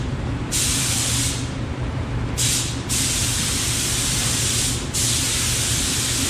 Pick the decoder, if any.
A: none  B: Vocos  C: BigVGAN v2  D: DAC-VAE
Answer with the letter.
C